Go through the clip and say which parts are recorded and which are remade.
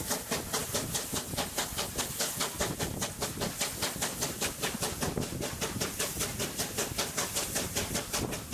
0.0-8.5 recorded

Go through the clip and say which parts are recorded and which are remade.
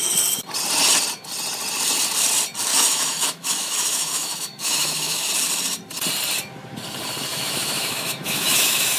0.0-2.7 recorded; 2.7-5.3 remade; 5.3-7.3 recorded; 7.3-9.0 remade